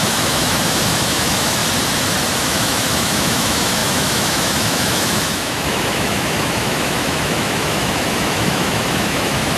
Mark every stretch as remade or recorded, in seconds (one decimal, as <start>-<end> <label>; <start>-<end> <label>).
0.0-1.6 remade; 1.6-2.4 recorded; 2.4-9.6 remade